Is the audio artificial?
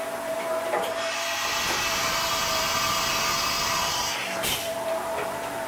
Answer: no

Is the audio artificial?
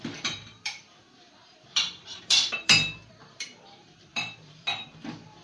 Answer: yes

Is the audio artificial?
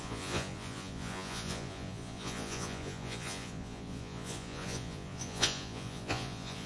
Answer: yes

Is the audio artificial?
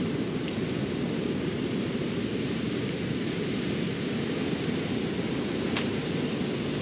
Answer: no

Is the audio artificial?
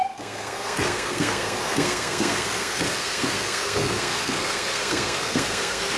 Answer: yes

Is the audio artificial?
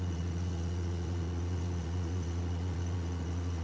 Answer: yes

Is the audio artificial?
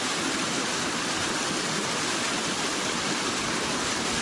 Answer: no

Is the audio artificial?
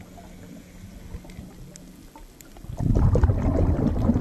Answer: no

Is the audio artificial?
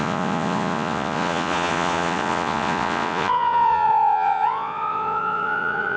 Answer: yes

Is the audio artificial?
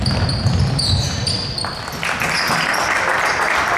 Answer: no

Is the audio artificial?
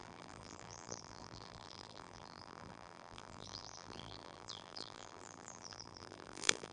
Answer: yes